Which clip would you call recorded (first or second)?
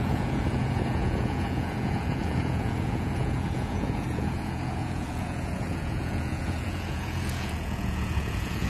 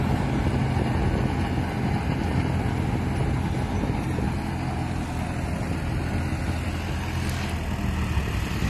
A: second